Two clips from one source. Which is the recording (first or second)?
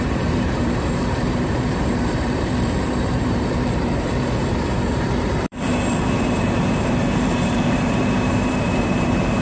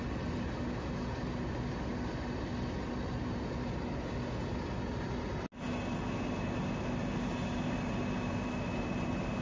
second